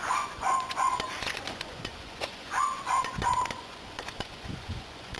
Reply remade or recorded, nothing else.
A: remade